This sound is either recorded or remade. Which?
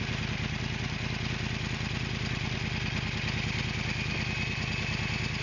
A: recorded